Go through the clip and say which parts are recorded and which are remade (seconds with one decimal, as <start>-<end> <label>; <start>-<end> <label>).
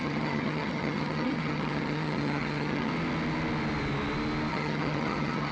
0.0-2.9 remade; 2.9-4.5 recorded; 4.5-5.5 remade